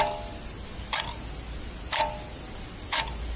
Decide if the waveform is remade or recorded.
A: recorded